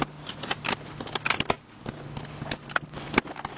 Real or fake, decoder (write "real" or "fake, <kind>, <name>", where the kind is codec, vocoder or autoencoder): real